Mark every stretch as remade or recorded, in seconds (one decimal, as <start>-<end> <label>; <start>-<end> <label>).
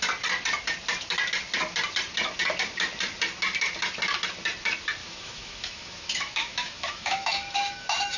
0.0-5.0 recorded; 5.0-8.2 remade